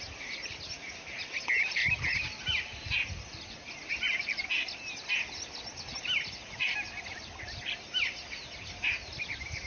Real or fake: real